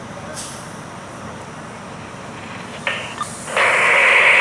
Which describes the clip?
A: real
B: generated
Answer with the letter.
A